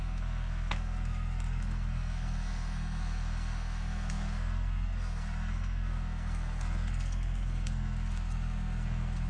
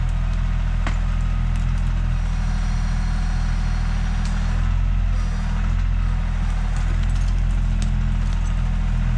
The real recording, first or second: second